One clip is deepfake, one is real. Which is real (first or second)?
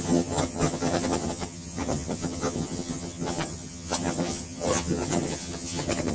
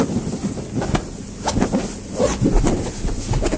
second